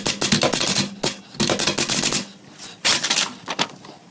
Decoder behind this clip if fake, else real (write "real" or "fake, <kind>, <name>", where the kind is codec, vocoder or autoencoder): real